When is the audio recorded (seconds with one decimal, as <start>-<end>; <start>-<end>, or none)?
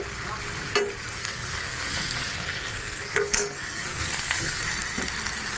0.0-1.2; 4.6-5.6